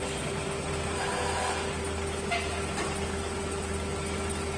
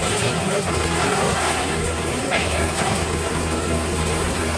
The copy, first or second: second